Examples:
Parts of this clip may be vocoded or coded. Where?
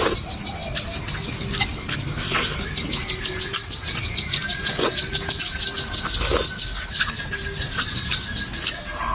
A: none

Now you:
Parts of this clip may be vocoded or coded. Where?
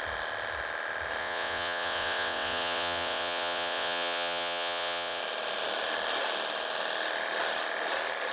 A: 1.2-5.2 (vocoder, WaveNeXt)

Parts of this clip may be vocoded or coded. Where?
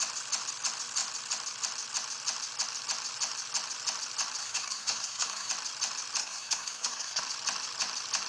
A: 4.4-5.5 (codec, SNAC); 6.2-7.2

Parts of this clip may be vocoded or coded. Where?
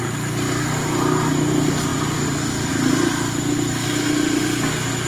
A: none